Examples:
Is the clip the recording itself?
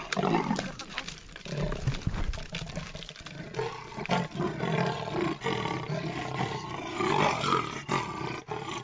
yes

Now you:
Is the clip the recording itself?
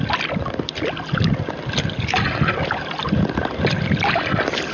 yes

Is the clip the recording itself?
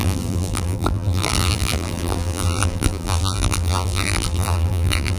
no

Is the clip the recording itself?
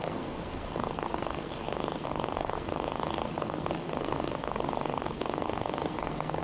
no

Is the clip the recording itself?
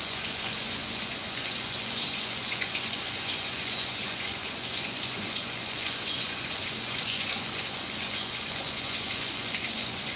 no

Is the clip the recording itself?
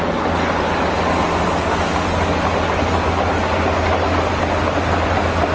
yes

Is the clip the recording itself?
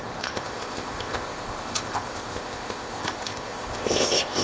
no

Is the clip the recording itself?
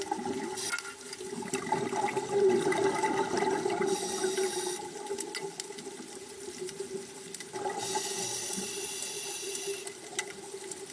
yes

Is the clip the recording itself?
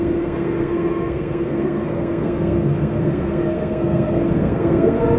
no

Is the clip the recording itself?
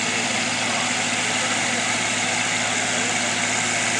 yes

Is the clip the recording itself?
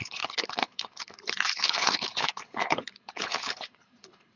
no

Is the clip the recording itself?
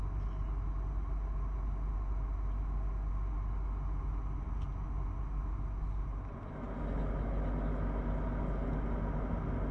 yes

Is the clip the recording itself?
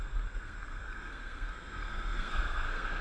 no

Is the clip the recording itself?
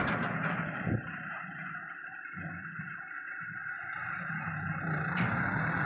yes